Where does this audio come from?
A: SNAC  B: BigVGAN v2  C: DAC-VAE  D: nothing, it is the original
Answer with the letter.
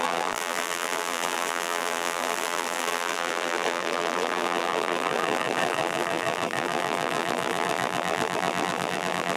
B